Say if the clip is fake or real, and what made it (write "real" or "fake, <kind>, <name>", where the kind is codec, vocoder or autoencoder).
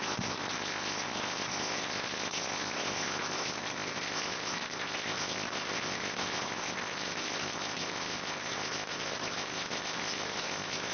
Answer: fake, codec, ZipCodec